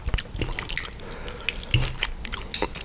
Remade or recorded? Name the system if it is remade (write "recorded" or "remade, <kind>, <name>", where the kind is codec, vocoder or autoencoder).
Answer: recorded